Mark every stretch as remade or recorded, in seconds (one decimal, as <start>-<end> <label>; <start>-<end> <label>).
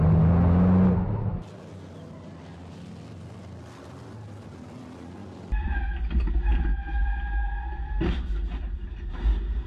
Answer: 0.0-5.2 recorded; 5.2-5.8 remade; 5.8-7.0 recorded; 7.0-7.5 remade; 7.5-9.7 recorded